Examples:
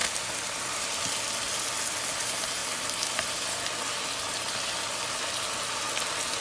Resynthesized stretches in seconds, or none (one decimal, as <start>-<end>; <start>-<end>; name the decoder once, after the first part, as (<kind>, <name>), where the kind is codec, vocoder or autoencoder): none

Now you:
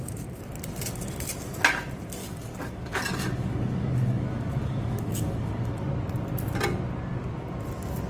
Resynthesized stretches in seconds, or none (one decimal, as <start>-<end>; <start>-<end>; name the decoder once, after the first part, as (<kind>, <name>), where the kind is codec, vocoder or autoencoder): 2.2-5.9 (codec, DAC)

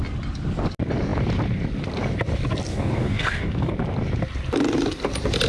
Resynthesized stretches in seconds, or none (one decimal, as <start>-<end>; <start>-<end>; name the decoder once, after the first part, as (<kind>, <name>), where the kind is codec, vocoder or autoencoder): 2.7-3.7 (codec, DAC)